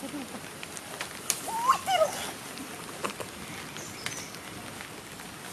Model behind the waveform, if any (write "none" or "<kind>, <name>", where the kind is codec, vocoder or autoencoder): none